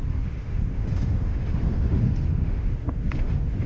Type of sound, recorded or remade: remade